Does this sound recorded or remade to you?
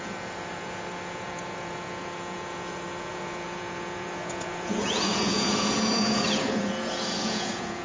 remade